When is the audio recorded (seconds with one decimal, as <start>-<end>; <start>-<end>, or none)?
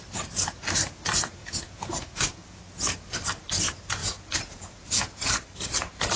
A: 0.0-1.4; 2.6-4.0; 5.4-6.2